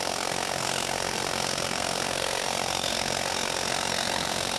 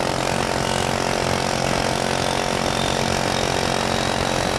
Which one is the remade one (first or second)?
first